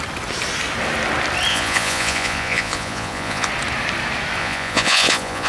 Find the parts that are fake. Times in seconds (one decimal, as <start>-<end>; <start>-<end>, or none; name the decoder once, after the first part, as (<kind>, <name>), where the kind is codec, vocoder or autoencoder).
1.5-3.5 (vocoder, Vocos); 4.4-5.5